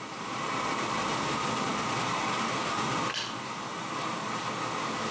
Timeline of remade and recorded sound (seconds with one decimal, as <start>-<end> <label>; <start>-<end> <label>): 0.0-5.1 recorded